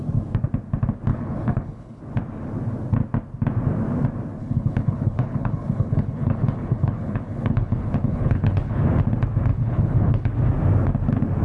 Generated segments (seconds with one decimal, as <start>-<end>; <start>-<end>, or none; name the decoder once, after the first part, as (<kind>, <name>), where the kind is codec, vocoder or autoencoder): 1.1-2.0 (codec, HILCodec); 4.4-8.8; 9.5-10.3